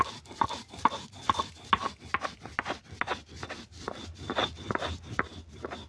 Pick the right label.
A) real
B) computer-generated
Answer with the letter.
A